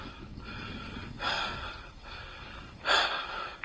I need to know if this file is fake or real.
fake